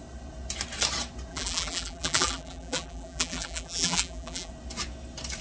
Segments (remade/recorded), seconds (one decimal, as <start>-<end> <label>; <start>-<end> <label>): 0.0-1.3 recorded; 1.3-4.5 remade; 4.5-5.4 recorded